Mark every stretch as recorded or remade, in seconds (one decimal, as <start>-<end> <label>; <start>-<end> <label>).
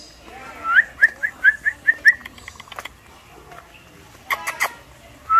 0.0-5.4 recorded